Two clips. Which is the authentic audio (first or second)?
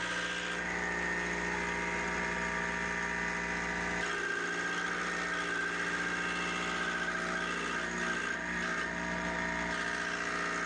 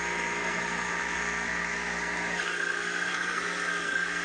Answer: first